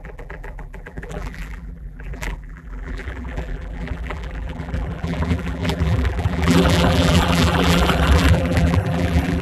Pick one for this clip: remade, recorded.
remade